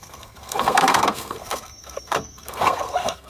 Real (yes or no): no